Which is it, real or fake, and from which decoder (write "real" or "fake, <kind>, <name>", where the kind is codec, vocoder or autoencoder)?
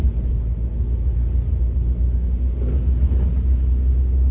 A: real